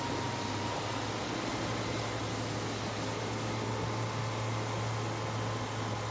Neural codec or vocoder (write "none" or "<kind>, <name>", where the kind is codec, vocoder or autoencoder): none